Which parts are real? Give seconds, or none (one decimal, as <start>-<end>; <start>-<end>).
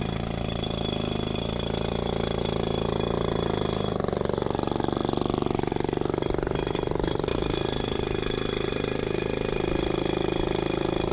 0.0-11.1